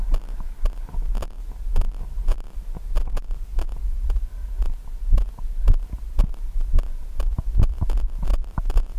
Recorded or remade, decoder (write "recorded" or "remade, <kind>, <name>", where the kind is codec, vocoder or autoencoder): recorded